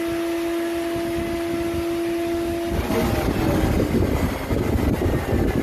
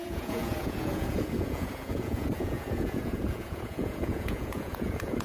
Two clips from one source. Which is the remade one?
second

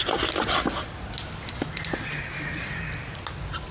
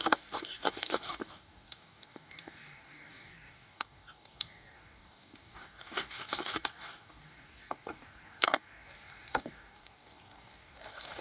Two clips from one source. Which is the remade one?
second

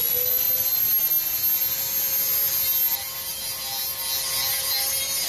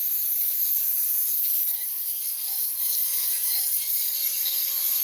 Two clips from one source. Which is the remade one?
second